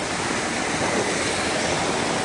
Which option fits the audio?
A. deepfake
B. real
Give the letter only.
B